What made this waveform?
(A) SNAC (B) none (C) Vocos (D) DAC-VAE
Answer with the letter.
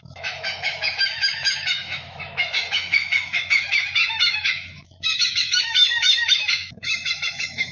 D